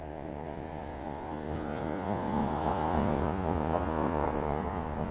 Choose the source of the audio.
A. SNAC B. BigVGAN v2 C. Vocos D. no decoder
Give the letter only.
C